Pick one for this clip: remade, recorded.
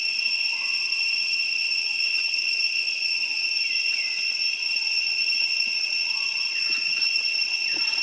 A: remade